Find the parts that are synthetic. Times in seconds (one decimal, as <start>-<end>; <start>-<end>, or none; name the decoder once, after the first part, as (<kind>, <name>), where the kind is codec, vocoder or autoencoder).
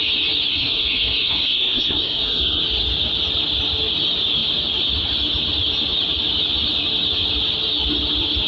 0.5-2.6 (codec, SNAC)